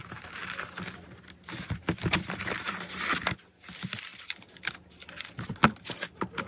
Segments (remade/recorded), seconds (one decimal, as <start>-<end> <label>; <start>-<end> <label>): 0.0-6.5 recorded